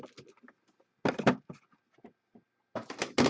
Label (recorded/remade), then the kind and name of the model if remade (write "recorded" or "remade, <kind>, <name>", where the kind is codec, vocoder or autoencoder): recorded